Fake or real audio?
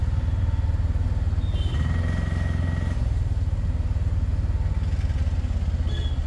real